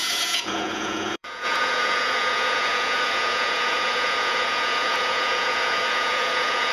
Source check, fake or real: fake